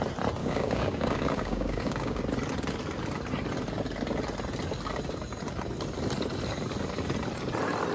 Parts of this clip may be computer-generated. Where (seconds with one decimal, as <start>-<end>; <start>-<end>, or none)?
0.4-2.2